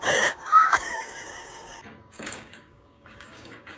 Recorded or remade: remade